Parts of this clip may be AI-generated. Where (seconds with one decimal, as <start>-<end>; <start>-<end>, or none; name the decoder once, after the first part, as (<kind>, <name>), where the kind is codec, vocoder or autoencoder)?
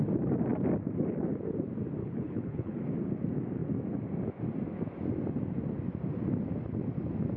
2.0-2.8 (codec, HILCodec)